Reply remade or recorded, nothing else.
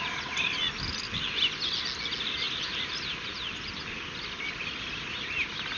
recorded